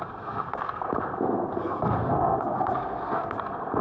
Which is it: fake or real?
fake